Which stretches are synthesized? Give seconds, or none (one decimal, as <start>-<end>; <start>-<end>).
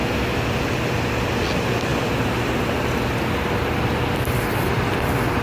none